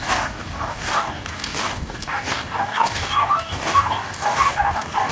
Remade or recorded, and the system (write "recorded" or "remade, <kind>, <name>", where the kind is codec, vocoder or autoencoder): remade, codec, DAC